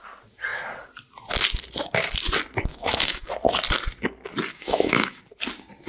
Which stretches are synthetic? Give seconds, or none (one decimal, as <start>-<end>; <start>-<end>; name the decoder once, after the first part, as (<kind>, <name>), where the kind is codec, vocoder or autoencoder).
2.7-3.3 (autoencoder, DAC-VAE); 4.5-5.2